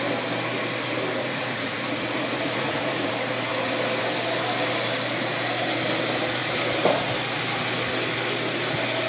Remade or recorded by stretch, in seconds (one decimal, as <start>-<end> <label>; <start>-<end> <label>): 0.0-1.2 recorded; 1.2-3.1 remade; 3.1-9.1 recorded